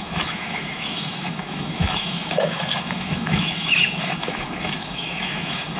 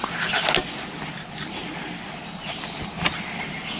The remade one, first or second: first